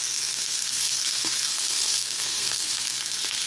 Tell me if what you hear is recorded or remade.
remade